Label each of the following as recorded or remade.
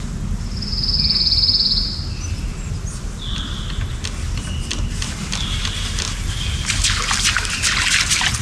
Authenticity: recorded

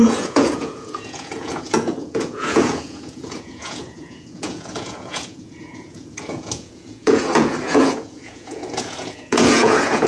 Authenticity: remade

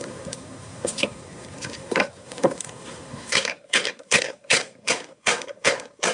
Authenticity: remade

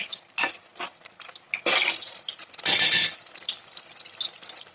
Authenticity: recorded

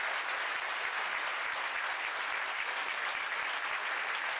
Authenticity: recorded